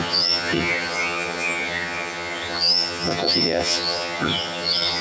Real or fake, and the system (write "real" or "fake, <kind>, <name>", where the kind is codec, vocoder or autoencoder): fake, vocoder, HiFi-GAN